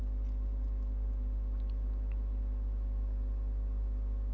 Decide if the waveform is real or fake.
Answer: real